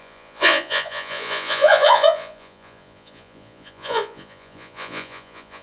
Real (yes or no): no